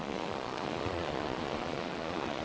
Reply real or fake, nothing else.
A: fake